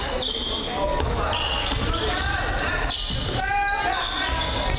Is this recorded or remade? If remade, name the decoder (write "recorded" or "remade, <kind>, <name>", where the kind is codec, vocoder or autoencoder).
recorded